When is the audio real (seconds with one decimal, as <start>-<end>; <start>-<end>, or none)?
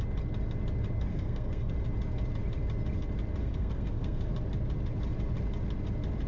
0.0-1.1; 1.7-3.4; 4.3-6.3